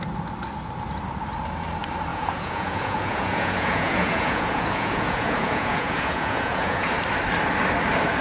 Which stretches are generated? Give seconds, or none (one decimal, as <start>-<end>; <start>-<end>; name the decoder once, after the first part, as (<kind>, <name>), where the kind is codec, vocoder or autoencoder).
2.1-7.0 (vocoder, Vocos)